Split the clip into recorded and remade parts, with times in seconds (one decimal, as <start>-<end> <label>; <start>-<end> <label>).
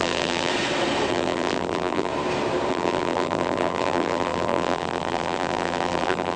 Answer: 0.0-0.5 remade; 0.5-1.1 recorded; 1.1-2.1 remade; 2.1-2.7 recorded; 2.7-6.4 remade